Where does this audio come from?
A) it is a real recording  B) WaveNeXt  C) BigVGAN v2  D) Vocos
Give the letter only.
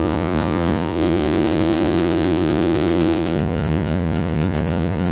D